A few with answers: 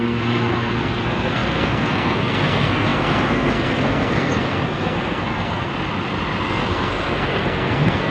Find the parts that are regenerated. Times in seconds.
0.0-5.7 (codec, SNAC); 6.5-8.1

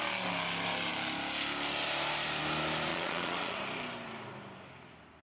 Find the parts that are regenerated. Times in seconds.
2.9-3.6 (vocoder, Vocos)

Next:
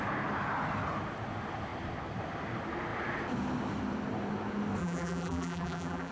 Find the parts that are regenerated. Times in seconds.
4.8-6.1 (vocoder, BigVGAN v2)